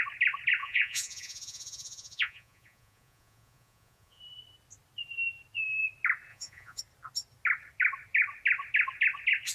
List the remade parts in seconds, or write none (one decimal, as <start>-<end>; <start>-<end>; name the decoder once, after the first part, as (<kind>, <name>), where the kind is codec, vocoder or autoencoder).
0.6-4.2 (vocoder, Vocos); 6.3-6.8